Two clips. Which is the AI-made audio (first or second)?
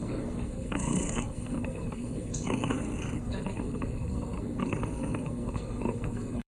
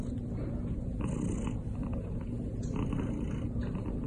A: first